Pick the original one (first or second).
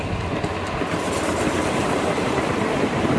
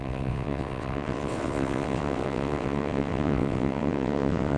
first